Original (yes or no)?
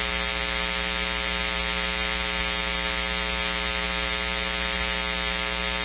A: yes